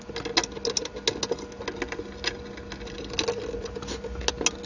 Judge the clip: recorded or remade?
recorded